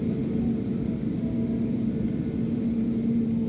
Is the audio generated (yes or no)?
no